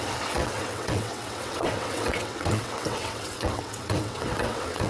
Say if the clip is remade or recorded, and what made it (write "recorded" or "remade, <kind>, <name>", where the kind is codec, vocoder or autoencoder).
remade, vocoder, WaveNeXt